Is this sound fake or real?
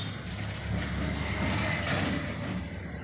real